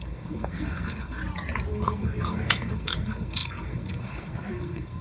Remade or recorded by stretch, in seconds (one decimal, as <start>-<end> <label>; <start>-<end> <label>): 0.0-1.2 remade; 1.2-1.7 recorded; 1.7-5.0 remade